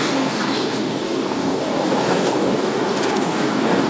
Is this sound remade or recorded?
remade